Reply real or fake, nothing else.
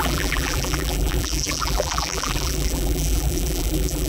fake